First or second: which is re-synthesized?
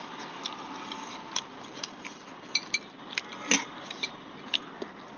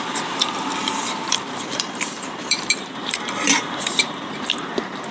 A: second